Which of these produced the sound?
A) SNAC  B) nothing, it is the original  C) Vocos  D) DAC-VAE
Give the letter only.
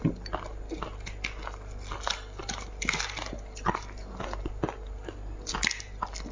B